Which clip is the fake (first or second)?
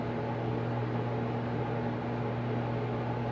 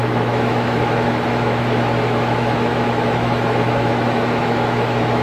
second